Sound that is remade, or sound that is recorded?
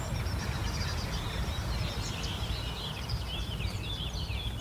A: recorded